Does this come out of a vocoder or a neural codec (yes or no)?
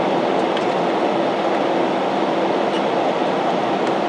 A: no